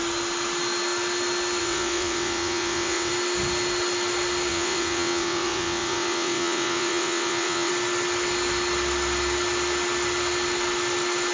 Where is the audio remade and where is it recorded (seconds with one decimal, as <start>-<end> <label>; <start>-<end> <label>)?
0.0-1.6 recorded; 1.6-3.1 remade; 3.1-4.5 recorded; 4.5-7.7 remade; 7.7-11.3 recorded